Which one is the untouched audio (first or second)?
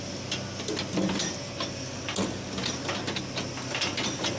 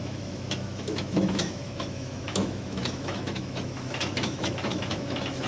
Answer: first